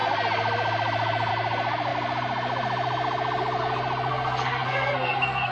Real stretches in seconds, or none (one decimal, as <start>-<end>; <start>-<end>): 0.0-4.1